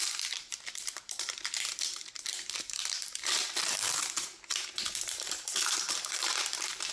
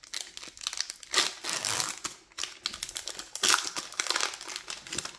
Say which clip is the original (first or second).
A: second